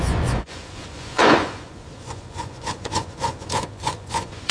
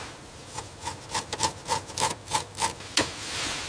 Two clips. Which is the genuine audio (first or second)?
second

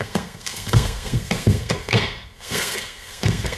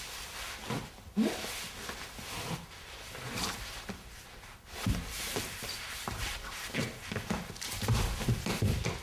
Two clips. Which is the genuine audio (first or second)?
second